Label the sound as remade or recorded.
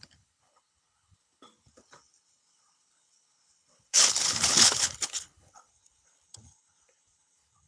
remade